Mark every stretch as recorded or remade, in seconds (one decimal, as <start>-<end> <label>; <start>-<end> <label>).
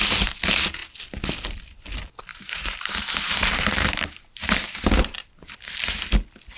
0.0-2.3 recorded; 2.3-6.0 remade; 6.0-6.6 recorded